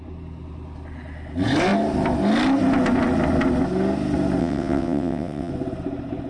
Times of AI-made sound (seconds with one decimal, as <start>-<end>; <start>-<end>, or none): 4.4-5.5